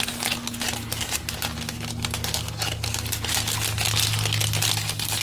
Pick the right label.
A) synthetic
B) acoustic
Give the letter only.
B